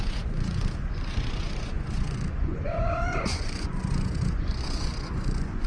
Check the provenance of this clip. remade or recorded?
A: remade